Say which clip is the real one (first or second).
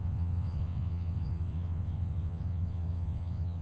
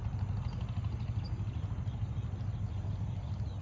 second